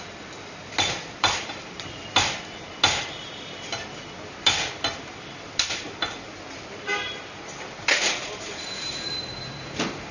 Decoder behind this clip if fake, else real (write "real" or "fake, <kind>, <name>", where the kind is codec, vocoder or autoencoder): fake, vocoder, BigVGAN v2